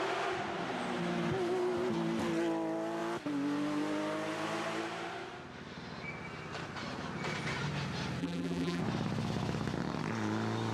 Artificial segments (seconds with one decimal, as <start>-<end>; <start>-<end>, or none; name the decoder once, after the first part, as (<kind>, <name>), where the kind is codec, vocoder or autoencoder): 8.2-8.8 (vocoder, BigVGAN v2)